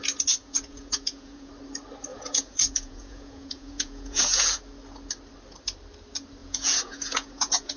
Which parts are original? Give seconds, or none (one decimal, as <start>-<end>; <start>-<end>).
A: 0.0-0.4; 1.5-2.1; 4.6-6.4